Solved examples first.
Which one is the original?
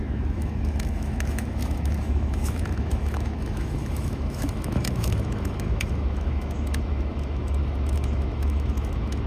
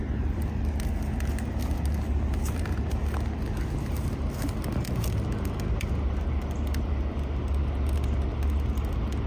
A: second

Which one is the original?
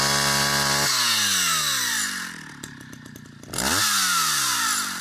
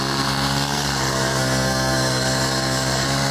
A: first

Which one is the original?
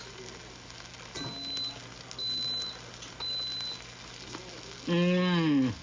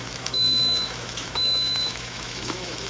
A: first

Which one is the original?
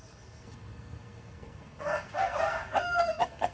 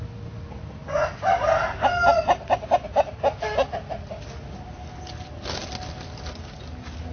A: second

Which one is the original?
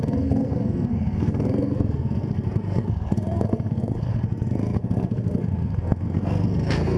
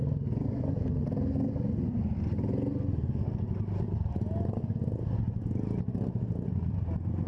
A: second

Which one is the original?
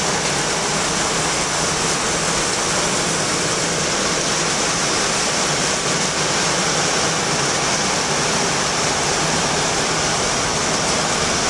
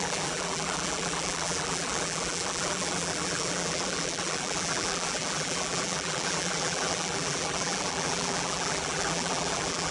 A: first